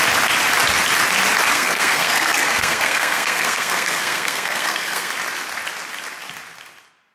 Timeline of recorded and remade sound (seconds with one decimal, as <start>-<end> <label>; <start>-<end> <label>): 0.0-1.5 recorded; 1.5-5.1 remade; 5.1-7.1 recorded